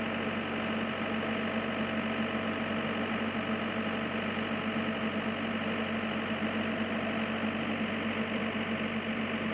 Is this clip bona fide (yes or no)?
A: yes